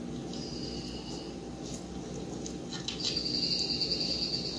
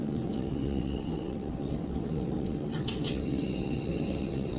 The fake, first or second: second